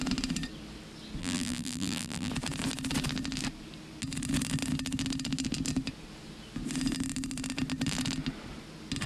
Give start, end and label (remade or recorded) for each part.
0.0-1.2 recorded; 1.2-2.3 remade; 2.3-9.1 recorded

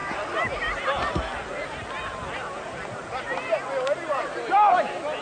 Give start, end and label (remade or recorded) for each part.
0.0-5.2 recorded

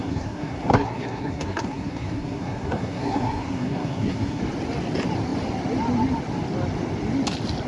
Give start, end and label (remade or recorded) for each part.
0.0-4.4 remade; 4.4-7.7 recorded

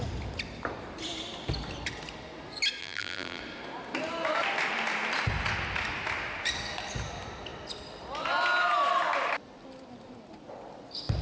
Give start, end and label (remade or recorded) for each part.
0.0-2.8 recorded; 2.8-3.4 remade; 3.4-11.2 recorded

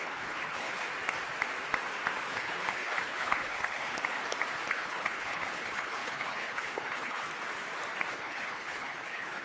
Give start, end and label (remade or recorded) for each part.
0.0-0.9 remade; 0.9-2.3 recorded; 2.3-3.9 remade; 3.9-4.7 recorded; 4.7-7.3 remade; 7.3-8.1 recorded; 8.1-9.4 remade

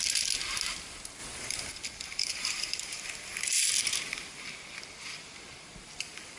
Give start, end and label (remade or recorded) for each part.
0.0-1.2 recorded; 1.2-1.7 remade; 1.7-2.1 recorded; 2.1-3.0 remade; 3.0-6.4 recorded

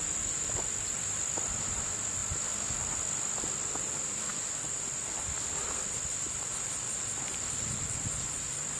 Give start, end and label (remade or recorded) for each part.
0.0-2.2 remade; 2.2-3.6 recorded; 3.6-8.8 remade

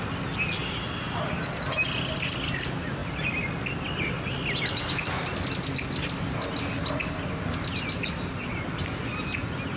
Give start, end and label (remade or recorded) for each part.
0.0-9.8 recorded